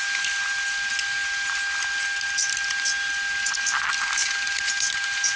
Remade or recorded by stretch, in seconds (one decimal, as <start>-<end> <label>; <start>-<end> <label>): 0.0-5.4 recorded